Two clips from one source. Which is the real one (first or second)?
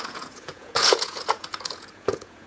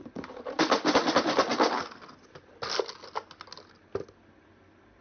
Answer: second